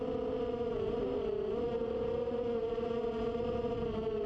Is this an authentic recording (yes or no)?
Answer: yes